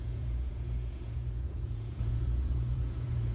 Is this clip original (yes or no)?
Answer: no